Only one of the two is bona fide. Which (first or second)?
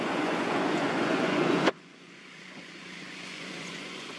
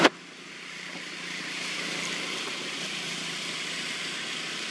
second